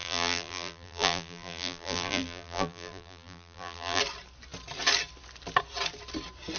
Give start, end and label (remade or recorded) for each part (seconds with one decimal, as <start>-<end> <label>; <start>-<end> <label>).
0.0-4.0 remade; 4.0-6.6 recorded

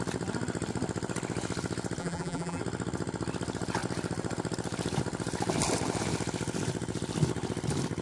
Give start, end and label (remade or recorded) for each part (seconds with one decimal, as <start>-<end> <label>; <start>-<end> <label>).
0.0-2.0 recorded; 2.0-2.6 remade; 2.6-8.0 recorded

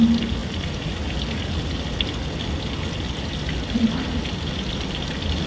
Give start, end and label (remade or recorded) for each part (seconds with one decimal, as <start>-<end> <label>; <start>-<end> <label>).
0.0-5.5 recorded

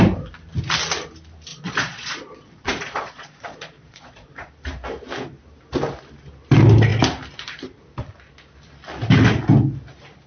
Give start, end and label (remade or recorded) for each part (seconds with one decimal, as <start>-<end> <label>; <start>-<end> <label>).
0.0-1.5 recorded; 1.5-4.5 remade; 4.5-10.3 recorded

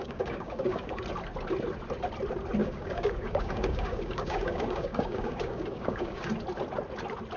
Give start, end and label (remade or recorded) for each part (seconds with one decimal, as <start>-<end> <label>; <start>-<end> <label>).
0.0-1.0 remade; 1.0-2.6 recorded; 2.6-6.3 remade; 6.3-7.4 recorded